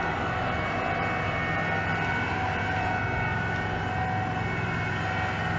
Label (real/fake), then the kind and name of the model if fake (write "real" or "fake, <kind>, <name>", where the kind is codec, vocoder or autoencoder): real